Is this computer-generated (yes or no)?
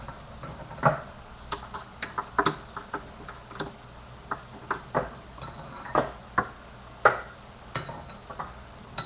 no